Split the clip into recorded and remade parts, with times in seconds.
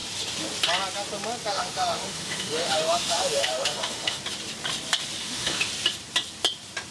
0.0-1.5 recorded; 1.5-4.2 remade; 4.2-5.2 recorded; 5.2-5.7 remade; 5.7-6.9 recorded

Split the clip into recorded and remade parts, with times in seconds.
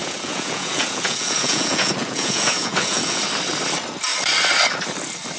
0.0-3.2 remade; 3.2-5.4 recorded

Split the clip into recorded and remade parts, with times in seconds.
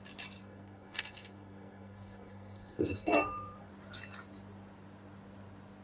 0.0-0.4 recorded; 0.4-3.7 remade; 3.7-5.8 recorded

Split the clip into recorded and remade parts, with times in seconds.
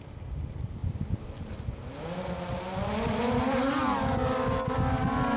0.0-5.4 recorded